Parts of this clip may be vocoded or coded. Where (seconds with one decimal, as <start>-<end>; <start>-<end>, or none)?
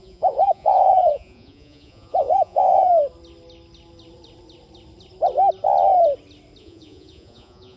0.0-2.9; 6.6-7.8